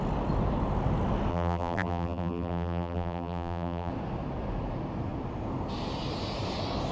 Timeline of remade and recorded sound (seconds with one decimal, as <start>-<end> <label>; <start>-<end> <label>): 0.0-1.3 recorded; 1.3-3.9 remade; 3.9-6.9 recorded